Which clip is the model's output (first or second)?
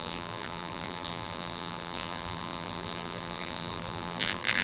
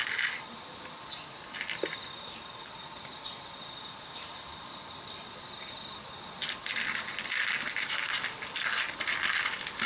first